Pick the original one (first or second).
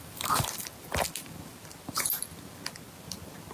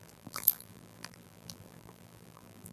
first